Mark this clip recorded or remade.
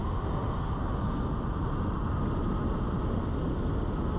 recorded